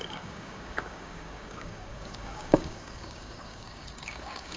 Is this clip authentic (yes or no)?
no